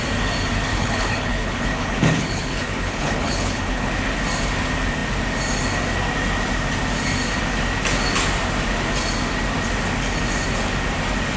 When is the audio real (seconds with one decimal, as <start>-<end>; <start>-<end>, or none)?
0.0-0.7; 3.9-11.4